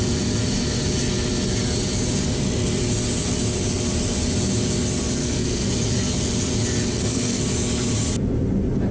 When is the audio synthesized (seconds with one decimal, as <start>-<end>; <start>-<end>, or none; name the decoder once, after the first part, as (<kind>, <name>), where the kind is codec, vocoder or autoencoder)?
5.2-5.7 (codec, SNAC); 6.9-7.4